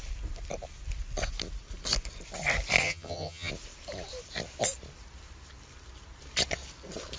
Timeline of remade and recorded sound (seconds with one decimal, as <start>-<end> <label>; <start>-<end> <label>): 0.0-2.8 recorded; 2.8-3.5 remade; 3.5-7.2 recorded